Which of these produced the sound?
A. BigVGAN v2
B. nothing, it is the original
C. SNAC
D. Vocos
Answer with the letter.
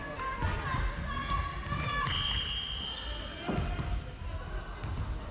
B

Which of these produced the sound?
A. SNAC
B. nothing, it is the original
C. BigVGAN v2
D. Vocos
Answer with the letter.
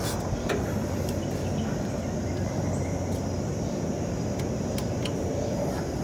B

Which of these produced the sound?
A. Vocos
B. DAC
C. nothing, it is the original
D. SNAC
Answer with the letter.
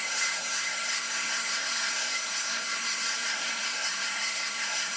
D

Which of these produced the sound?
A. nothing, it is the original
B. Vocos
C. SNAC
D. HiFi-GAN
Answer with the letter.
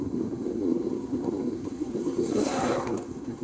C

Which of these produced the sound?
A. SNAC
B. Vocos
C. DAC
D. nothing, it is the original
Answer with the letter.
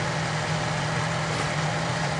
D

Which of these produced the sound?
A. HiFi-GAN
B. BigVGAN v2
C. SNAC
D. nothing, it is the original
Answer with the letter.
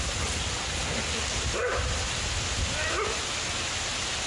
D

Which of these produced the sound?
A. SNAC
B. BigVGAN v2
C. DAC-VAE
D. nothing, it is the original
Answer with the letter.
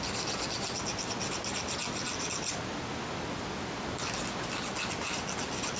D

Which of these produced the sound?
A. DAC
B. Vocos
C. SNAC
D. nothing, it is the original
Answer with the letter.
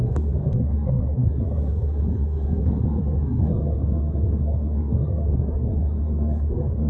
C